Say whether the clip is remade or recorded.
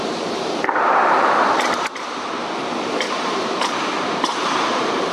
remade